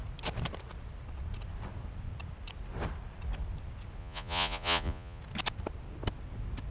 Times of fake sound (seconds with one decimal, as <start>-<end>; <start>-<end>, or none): 4.0-5.2